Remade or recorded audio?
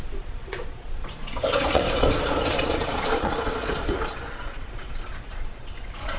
remade